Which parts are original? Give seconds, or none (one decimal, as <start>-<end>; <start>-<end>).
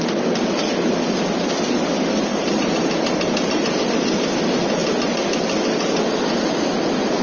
0.0-2.3; 3.8-7.2